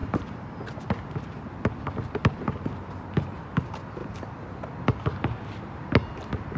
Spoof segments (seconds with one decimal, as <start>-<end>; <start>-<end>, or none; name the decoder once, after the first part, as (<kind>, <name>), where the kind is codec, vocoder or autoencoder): none